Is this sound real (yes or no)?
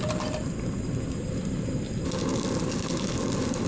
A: yes